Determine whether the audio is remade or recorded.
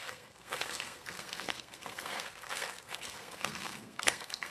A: remade